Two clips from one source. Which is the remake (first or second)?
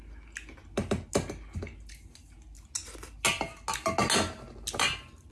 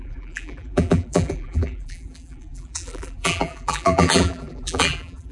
second